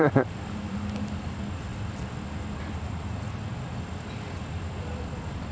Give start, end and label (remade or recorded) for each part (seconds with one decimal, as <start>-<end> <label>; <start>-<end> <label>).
0.0-1.7 remade; 1.7-5.0 recorded; 5.0-5.5 remade